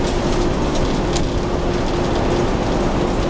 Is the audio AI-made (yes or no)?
no